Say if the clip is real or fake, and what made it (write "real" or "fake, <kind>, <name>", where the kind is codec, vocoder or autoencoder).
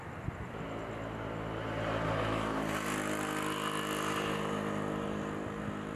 real